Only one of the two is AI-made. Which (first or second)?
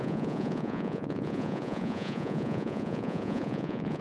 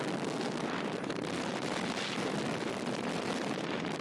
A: first